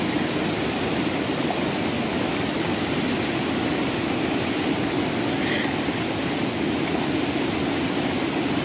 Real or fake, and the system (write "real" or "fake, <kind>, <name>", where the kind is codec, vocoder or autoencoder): real